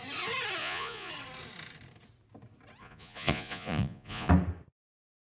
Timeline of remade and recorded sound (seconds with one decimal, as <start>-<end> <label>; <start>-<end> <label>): 0.0-0.6 recorded; 0.6-1.1 remade; 1.1-2.8 recorded; 2.8-4.3 remade; 4.3-5.3 recorded

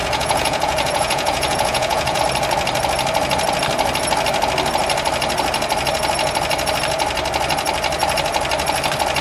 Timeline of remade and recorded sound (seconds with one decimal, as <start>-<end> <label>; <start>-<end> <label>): 0.0-2.2 remade; 2.2-9.2 recorded

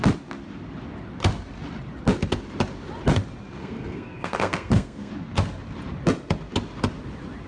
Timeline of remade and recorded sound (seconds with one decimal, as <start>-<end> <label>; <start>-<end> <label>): 0.0-3.6 recorded; 3.6-5.1 remade; 5.1-7.5 recorded

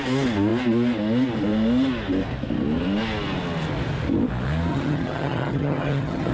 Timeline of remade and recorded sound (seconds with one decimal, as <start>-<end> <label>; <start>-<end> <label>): 0.0-4.7 recorded; 4.7-6.3 remade

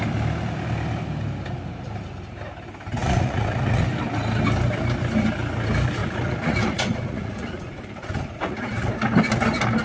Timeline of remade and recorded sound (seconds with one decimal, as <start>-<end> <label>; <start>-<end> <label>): 0.0-3.0 recorded; 3.0-3.8 remade; 3.8-6.0 recorded; 6.0-8.9 remade; 8.9-9.8 recorded